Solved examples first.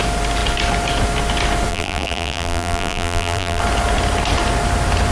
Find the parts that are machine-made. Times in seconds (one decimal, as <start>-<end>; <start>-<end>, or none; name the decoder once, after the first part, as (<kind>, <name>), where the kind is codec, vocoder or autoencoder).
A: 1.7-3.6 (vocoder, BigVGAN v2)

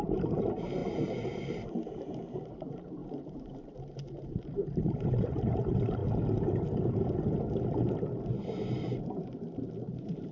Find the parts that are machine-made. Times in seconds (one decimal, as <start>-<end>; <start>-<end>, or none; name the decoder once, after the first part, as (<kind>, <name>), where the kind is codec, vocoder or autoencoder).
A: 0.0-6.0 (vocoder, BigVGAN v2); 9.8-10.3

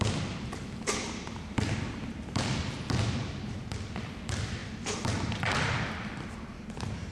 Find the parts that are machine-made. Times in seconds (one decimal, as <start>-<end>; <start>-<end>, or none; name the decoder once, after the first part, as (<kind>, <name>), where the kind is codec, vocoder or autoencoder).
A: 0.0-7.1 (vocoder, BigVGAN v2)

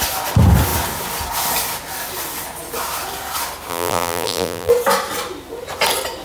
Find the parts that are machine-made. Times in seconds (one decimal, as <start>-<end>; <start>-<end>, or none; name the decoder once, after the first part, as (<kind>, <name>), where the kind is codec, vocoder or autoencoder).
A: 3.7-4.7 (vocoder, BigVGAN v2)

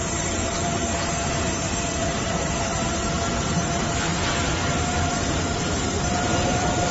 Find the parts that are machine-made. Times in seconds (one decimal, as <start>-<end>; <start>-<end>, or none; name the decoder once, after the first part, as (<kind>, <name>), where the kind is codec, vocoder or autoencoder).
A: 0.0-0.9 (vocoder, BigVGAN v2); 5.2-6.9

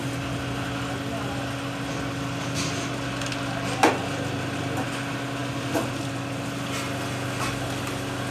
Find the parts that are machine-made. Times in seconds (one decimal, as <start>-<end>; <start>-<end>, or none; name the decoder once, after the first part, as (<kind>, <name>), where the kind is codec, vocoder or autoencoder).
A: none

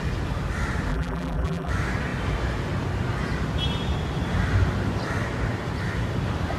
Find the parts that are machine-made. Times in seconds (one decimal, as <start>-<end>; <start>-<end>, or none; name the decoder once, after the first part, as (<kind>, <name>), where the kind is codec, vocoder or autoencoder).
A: 0.9-1.7 (vocoder, BigVGAN v2)

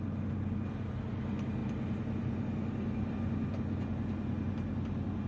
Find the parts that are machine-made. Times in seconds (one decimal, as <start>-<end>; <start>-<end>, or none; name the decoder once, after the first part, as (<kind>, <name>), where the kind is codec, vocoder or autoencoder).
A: none